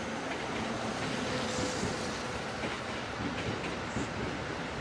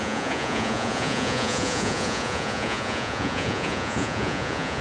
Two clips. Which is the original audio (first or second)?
first